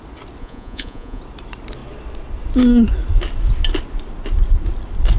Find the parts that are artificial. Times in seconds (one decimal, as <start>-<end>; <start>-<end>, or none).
0.4-1.2